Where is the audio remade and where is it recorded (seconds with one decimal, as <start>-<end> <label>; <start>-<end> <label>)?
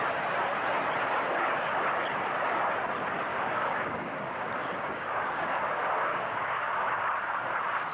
0.0-3.3 recorded; 3.3-5.6 remade; 5.6-6.1 recorded; 6.1-7.0 remade; 7.0-7.9 recorded